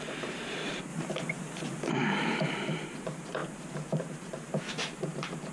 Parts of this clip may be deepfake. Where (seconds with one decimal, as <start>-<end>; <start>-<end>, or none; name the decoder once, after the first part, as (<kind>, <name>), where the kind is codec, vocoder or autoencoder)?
0.0-0.9 (vocoder, BigVGAN v2); 1.9-5.5